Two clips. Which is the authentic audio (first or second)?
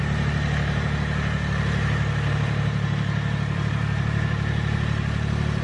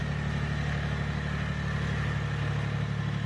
second